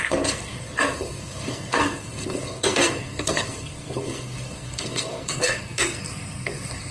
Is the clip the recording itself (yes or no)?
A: no